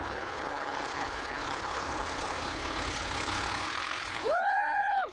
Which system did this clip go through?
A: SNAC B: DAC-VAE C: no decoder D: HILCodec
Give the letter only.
D